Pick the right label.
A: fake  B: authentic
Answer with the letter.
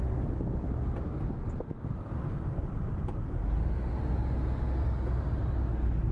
B